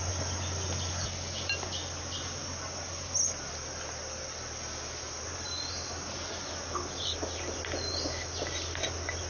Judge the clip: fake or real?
real